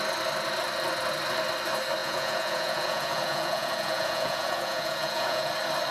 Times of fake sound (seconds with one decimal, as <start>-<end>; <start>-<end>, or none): 2.0-5.5